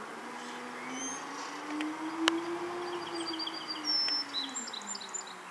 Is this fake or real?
real